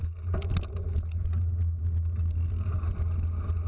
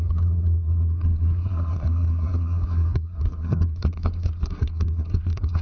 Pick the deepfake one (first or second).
second